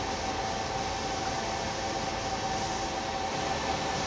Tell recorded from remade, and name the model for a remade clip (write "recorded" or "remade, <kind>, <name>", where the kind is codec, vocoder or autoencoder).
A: recorded